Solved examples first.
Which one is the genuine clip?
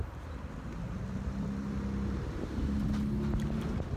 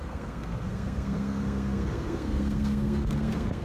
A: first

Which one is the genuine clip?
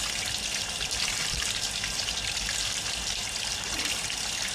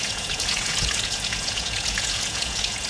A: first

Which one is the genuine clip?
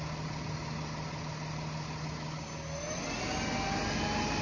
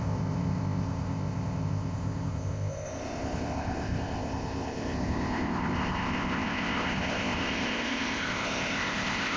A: first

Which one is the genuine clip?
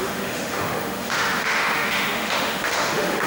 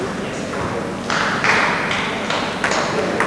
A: second